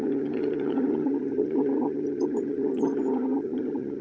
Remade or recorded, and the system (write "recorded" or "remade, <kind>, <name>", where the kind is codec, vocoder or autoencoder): remade, vocoder, HiFi-GAN